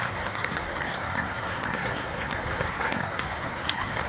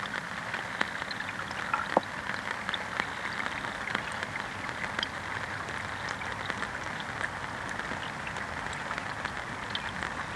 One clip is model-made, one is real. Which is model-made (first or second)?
first